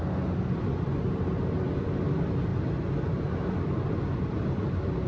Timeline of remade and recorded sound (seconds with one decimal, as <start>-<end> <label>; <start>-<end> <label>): 0.0-1.0 recorded; 1.0-2.5 remade; 2.5-4.3 recorded; 4.3-5.1 remade